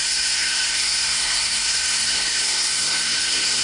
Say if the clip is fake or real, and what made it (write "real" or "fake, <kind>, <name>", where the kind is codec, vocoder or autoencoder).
fake, codec, SNAC